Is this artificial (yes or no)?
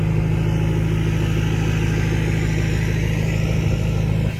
no